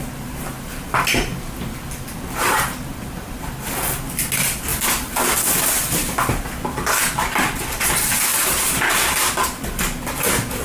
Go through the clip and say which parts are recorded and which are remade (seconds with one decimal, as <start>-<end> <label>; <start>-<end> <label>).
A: 0.0-8.3 recorded; 8.3-9.1 remade; 9.1-10.6 recorded